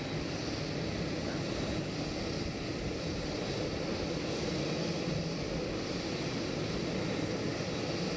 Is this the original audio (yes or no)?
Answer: yes